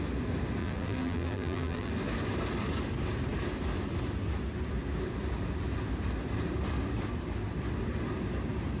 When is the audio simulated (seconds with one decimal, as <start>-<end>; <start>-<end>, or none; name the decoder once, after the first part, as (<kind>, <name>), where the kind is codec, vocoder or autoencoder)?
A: 0.6-1.9 (vocoder, BigVGAN v2)